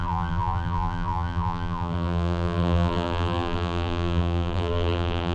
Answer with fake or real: fake